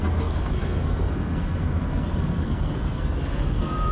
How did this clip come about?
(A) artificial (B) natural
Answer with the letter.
A